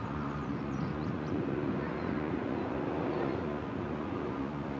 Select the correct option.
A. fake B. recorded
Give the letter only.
A